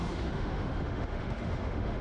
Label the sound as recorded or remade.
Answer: remade